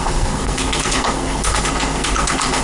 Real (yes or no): no